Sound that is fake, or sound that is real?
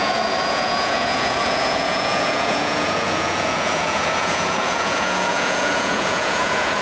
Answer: fake